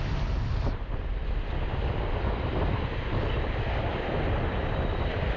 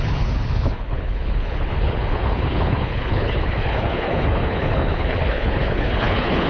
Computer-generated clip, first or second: second